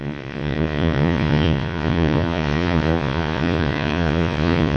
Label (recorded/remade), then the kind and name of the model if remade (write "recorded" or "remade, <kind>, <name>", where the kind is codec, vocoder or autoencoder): remade, vocoder, Vocos